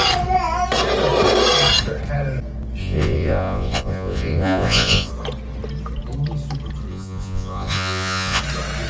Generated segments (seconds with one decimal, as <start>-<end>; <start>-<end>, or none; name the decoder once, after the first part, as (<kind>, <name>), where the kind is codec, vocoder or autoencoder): 2.8-5.1 (vocoder, Vocos); 6.9-8.4